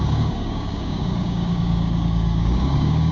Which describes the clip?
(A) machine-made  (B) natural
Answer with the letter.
A